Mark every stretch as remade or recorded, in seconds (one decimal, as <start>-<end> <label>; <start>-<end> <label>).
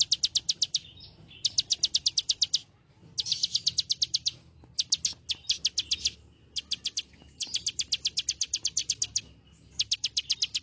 0.0-10.6 recorded